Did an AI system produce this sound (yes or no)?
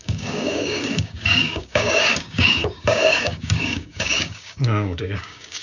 yes